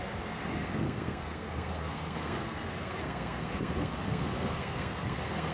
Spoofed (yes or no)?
yes